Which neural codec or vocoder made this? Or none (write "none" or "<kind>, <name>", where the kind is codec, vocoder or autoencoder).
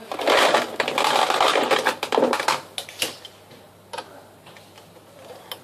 none